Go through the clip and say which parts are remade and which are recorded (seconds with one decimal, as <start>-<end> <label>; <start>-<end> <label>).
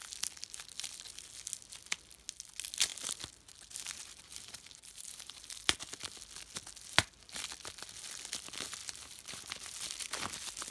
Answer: 0.0-4.3 recorded; 4.3-5.4 remade; 5.4-8.8 recorded; 8.8-9.5 remade; 9.5-10.7 recorded